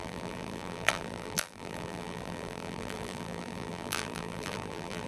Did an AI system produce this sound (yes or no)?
yes